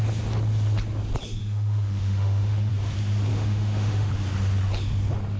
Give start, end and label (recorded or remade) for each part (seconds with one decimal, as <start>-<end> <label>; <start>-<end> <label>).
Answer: 0.0-1.4 recorded; 1.4-2.7 remade; 2.7-3.3 recorded; 3.3-4.1 remade; 4.1-5.4 recorded